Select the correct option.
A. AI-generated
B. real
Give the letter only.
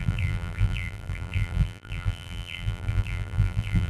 A